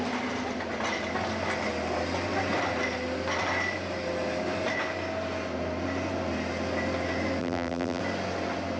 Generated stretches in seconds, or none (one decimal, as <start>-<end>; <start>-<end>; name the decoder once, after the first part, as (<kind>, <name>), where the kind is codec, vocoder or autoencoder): 7.4-8.0 (vocoder, BigVGAN v2)